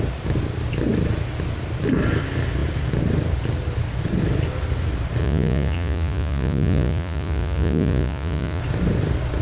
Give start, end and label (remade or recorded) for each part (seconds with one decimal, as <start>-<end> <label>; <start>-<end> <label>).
0.0-5.2 recorded; 5.2-8.6 remade; 8.6-9.4 recorded